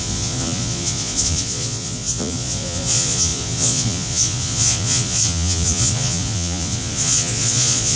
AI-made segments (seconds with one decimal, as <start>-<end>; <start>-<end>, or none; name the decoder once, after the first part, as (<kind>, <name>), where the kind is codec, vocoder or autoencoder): 0.0-8.0 (vocoder, Vocos)